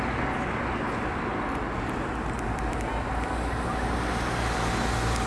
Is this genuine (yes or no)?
yes